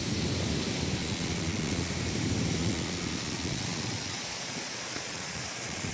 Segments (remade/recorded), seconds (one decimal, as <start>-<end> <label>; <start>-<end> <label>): 0.0-1.0 recorded; 1.0-1.9 remade; 1.9-2.6 recorded; 2.6-5.9 remade